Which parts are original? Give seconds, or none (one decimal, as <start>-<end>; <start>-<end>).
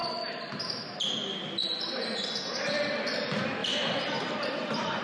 0.9-1.7; 2.3-3.6